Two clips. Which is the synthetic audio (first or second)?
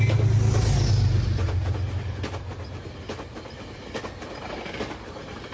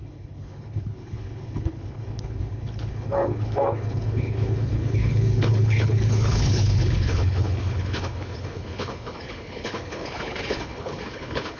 second